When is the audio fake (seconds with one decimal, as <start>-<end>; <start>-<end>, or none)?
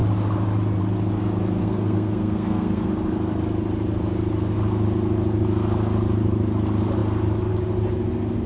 1.6-2.9